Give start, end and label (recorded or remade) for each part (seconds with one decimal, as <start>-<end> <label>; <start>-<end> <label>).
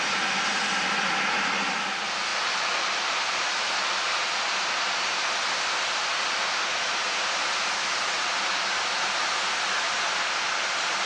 0.0-2.3 recorded; 2.3-3.4 remade; 3.4-11.1 recorded